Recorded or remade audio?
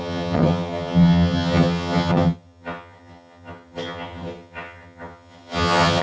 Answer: remade